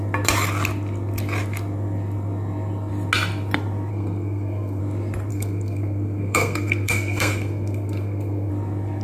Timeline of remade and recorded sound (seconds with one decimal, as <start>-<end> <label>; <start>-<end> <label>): 0.0-3.9 recorded; 3.9-4.8 remade; 4.8-5.3 recorded; 5.3-8.5 remade; 8.5-9.0 recorded